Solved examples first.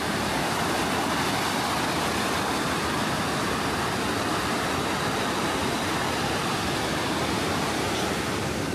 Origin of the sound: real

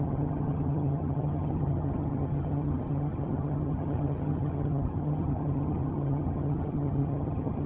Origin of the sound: fake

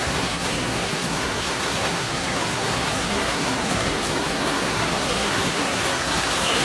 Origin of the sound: fake